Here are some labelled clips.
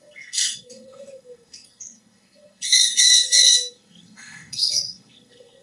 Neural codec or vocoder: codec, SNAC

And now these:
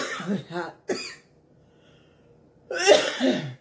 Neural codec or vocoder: none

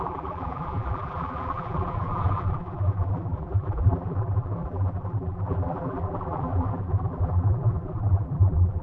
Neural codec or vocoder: vocoder, BigVGAN v2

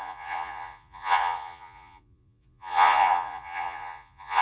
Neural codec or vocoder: vocoder, Vocos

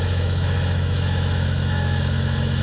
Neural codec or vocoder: autoencoder, DAC-VAE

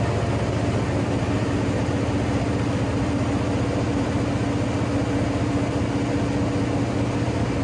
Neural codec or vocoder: none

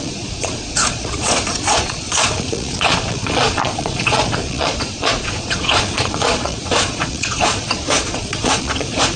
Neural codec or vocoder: vocoder, Vocos